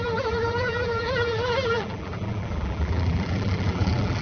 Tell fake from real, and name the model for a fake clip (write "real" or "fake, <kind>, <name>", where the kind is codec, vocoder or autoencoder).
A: fake, vocoder, BigVGAN v2